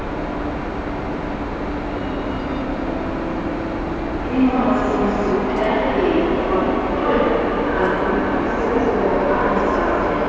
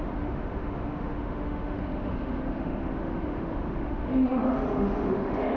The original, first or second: first